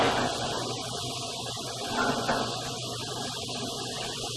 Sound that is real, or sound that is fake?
fake